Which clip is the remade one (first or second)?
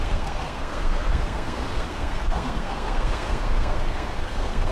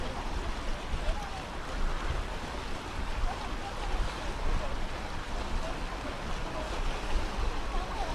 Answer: first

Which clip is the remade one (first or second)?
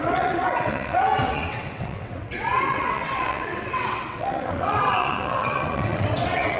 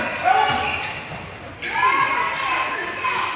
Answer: first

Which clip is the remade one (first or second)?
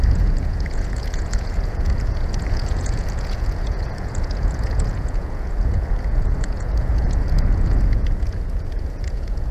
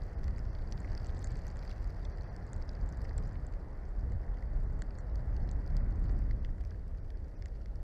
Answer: first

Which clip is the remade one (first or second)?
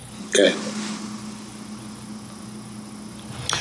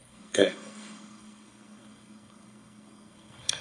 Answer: second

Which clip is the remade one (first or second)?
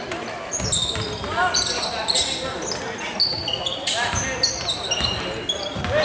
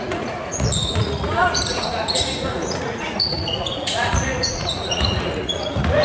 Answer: second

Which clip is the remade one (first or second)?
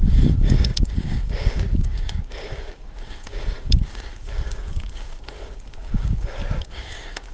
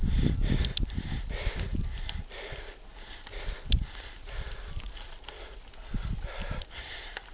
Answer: first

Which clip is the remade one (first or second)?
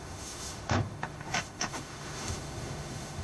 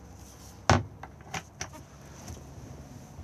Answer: first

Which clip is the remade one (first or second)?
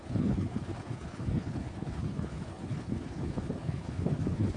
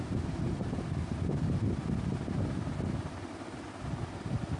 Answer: first